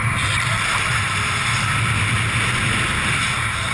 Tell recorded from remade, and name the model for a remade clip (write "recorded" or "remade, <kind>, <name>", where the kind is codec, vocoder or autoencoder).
recorded